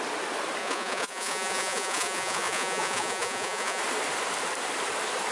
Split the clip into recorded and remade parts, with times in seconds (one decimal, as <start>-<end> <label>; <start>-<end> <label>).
0.0-0.6 recorded; 0.6-3.8 remade; 3.8-5.3 recorded